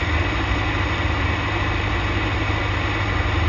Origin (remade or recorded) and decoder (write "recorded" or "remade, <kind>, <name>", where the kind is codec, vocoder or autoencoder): recorded